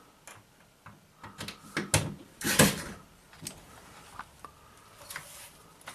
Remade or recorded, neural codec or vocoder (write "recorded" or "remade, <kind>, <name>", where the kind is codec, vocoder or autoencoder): recorded